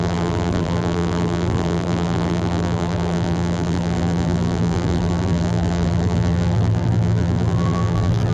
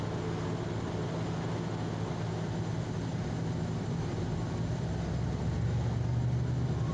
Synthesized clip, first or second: first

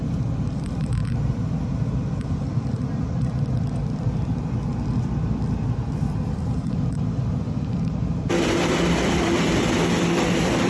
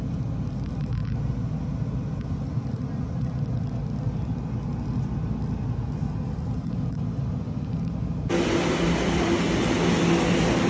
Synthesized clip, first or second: first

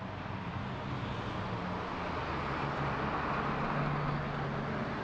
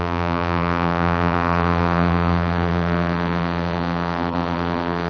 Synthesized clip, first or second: second